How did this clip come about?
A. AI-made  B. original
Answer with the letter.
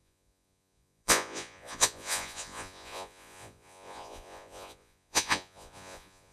A